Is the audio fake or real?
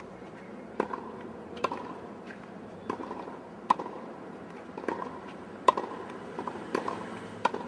fake